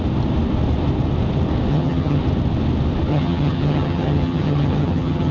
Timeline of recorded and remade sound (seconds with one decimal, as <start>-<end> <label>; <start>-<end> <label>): 0.0-1.7 recorded; 1.7-2.2 remade; 2.2-3.1 recorded; 3.1-5.3 remade